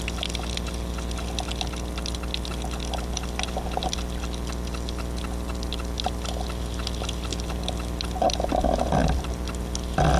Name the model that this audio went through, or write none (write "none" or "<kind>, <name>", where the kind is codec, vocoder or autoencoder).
none